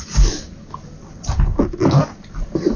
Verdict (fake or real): real